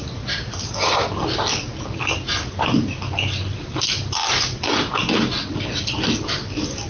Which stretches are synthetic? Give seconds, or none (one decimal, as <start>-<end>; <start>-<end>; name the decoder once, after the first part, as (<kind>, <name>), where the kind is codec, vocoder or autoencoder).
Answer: none